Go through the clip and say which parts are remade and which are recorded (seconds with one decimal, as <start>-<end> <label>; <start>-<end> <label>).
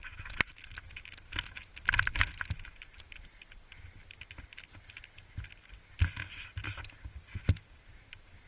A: 0.0-8.5 recorded